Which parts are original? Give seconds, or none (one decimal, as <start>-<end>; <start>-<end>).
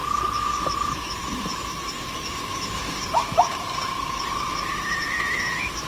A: none